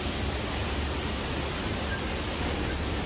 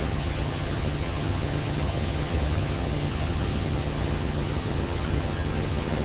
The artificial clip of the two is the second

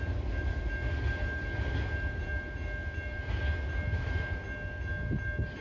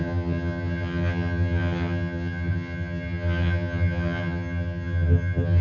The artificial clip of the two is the second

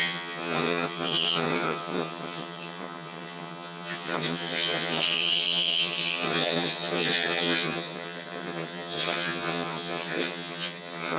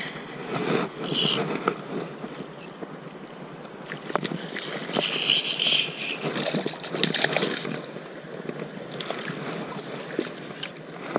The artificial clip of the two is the first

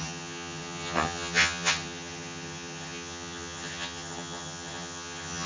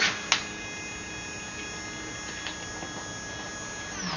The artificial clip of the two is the first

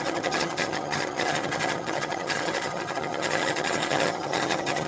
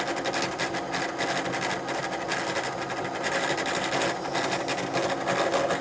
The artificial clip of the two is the first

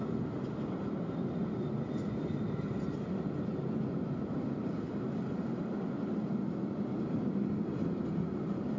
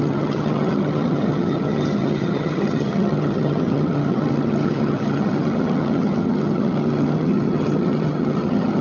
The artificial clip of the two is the second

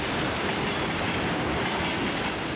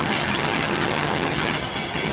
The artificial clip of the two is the second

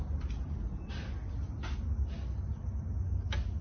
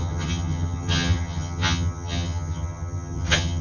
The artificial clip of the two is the second